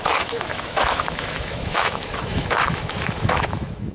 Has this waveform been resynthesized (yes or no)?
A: yes